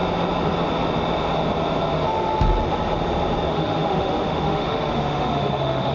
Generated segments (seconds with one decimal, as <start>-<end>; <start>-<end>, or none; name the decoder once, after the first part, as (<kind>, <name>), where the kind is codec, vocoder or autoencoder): 3.5-5.9 (autoencoder, DAC-VAE)